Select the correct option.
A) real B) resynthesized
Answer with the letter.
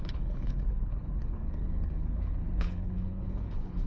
B